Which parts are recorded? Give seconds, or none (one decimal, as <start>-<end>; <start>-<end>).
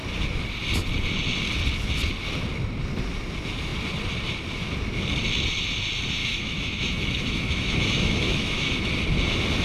0.0-6.2; 8.9-9.6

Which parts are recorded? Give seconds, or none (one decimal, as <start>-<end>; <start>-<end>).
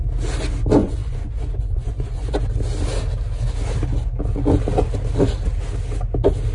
0.0-0.8; 2.4-6.5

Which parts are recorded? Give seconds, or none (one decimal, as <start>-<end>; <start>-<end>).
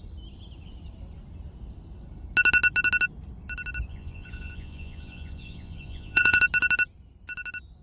0.0-3.9; 6.4-7.8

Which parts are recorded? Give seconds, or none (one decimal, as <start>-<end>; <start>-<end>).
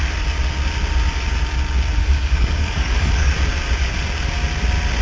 0.0-2.0; 3.3-5.0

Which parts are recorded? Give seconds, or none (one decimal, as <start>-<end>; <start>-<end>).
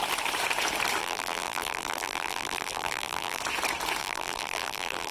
0.0-1.0; 3.4-4.0